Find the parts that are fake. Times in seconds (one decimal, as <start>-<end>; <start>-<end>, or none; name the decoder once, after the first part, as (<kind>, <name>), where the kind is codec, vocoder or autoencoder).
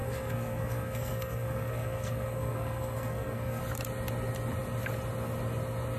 0.0-3.6 (codec, SNAC)